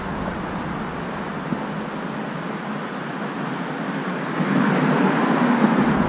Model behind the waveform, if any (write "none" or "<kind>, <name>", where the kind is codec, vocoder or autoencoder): none